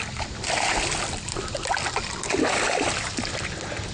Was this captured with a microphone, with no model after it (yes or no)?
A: yes